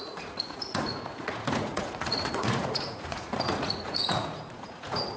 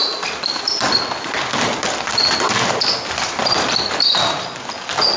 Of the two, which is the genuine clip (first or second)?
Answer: second